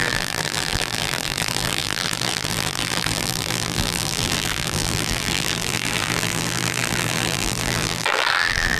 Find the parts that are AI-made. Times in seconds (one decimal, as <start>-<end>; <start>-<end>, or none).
0.0-8.8